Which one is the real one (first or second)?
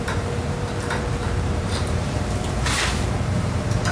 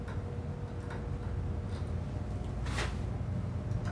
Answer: second